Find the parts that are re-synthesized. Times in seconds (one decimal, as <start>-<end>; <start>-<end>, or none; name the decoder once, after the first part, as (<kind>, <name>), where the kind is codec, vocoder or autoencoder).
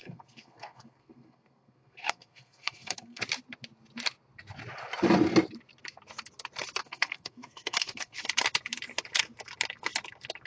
0.0-3.2 (codec, SNAC); 6.8-8.2